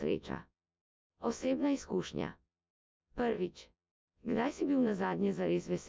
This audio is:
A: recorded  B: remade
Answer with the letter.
B